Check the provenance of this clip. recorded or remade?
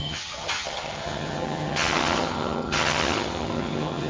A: remade